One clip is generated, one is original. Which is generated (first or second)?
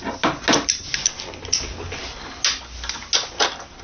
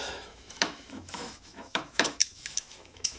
second